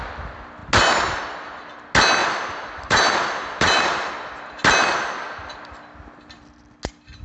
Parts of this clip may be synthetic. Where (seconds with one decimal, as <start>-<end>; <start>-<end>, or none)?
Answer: 2.2-4.1